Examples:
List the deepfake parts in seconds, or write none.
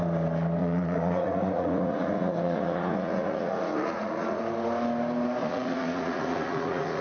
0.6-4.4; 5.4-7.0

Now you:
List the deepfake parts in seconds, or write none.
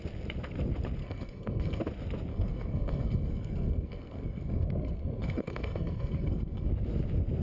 1.0-1.8; 2.3-6.7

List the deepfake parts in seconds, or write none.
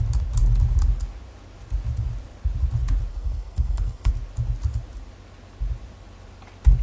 3.1-4.1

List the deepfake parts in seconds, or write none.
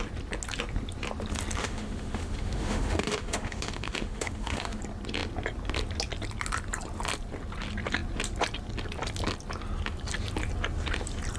1.6-4.8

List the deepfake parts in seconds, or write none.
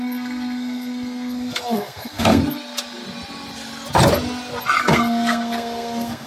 0.0-2.4; 4.8-6.3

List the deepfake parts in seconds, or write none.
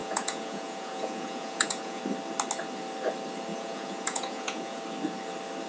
0.0-2.0; 3.5-4.8